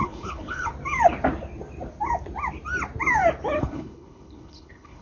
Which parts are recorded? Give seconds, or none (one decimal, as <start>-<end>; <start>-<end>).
0.7-3.6